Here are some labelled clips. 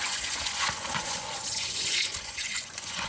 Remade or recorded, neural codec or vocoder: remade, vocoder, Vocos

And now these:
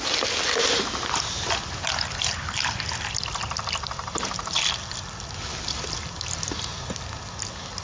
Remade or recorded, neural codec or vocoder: recorded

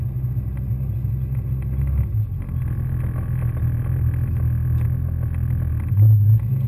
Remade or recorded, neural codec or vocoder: recorded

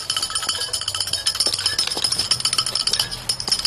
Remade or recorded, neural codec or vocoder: recorded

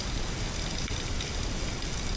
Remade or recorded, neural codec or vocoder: recorded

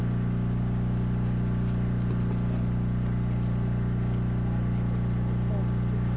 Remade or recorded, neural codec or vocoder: recorded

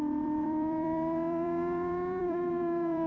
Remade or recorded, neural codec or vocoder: remade, vocoder, BigVGAN v2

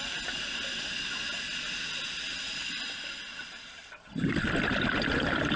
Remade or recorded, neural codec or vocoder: recorded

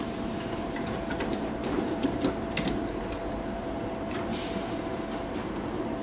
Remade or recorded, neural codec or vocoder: remade, vocoder, BigVGAN v2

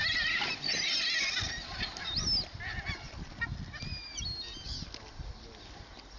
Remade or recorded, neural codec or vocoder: recorded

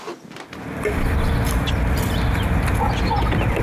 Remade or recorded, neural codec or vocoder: recorded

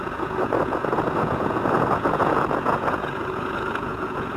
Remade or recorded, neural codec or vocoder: remade, vocoder, Vocos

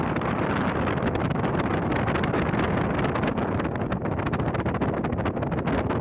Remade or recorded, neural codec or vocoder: recorded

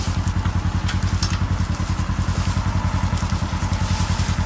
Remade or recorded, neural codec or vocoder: recorded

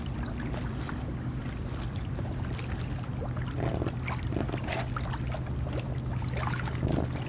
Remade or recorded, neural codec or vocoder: recorded